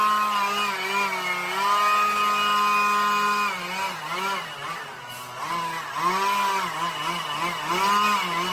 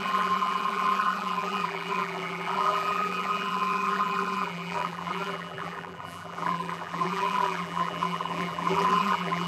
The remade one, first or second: second